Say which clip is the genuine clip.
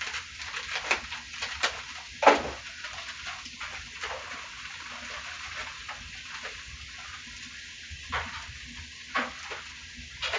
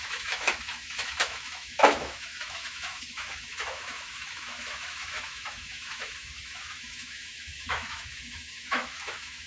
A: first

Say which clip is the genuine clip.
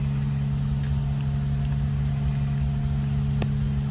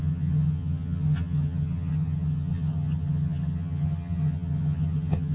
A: first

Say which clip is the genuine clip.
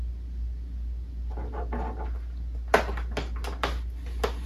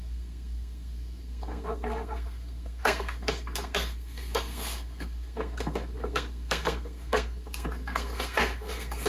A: first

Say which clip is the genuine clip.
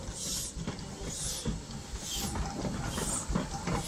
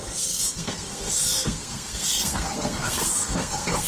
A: first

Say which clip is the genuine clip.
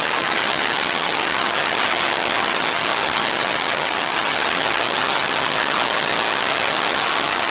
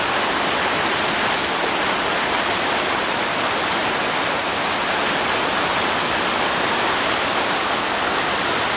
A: second